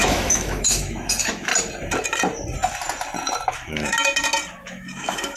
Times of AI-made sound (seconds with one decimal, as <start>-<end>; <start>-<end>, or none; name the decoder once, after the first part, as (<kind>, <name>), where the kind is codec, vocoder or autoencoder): 0.0-1.5 (autoencoder, DAC-VAE); 3.5-3.9; 4.6-5.4